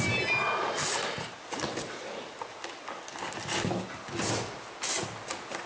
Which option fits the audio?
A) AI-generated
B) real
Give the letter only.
B